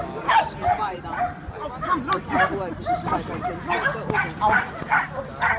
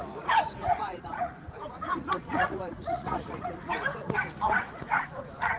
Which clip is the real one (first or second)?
first